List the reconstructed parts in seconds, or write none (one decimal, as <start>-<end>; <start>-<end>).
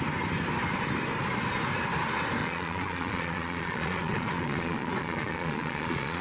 2.4-6.2